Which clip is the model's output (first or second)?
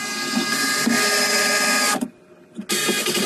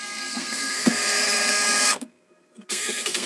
second